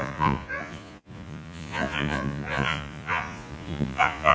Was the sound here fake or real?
fake